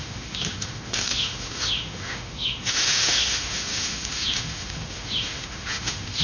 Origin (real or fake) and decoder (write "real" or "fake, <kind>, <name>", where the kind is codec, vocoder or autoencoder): fake, autoencoder, DAC-VAE